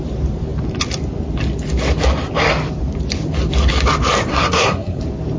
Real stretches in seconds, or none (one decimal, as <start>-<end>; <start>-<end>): 0.0-4.3; 5.0-5.4